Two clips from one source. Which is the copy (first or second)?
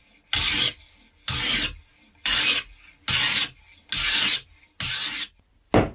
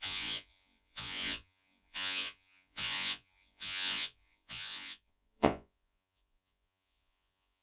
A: second